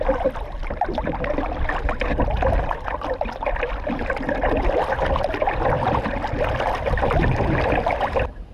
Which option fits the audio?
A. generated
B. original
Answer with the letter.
B